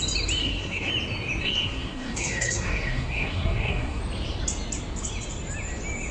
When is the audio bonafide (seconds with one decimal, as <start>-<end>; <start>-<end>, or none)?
0.0-0.4; 0.9-1.4; 4.0-6.1